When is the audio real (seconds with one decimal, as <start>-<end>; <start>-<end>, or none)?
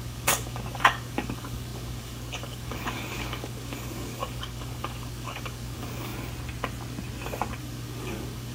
6.1-7.6